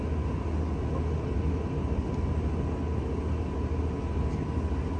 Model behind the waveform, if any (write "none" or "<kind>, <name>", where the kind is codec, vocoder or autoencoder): none